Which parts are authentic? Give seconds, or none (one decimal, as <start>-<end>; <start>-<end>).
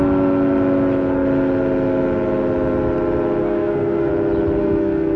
0.0-3.4; 4.1-4.6